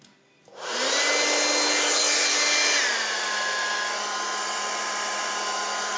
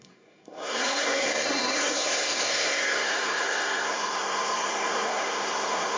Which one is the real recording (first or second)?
first